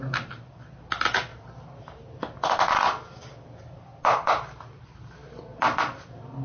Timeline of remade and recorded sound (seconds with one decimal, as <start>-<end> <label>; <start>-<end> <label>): 0.0-1.3 recorded; 1.3-3.8 remade; 3.8-5.2 recorded; 5.2-5.8 remade; 5.8-6.4 recorded